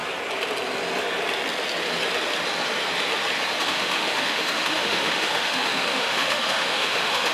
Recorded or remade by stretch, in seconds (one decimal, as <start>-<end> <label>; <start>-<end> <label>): 0.0-3.6 recorded; 3.6-7.3 remade